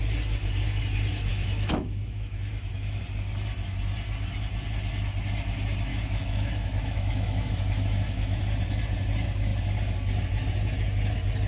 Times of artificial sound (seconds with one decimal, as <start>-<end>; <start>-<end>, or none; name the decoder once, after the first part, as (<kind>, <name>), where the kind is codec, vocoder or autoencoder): 1.3-3.0 (autoencoder, DAC-VAE); 5.9-8.4